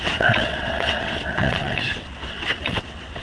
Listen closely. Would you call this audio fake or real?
fake